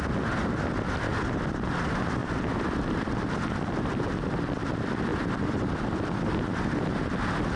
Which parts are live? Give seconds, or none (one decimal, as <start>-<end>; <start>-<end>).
0.0-2.2; 3.0-5.1